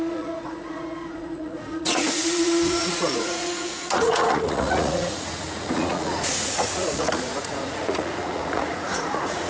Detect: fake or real fake